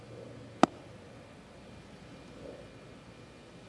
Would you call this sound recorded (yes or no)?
yes